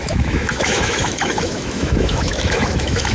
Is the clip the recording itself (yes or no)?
no